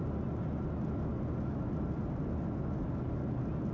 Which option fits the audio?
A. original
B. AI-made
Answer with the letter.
A